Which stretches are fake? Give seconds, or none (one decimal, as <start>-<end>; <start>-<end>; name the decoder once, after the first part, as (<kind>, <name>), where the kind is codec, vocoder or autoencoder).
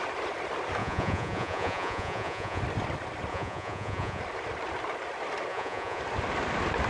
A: 0.8-2.6 (vocoder, Vocos); 3.3-4.2; 5.5-6.0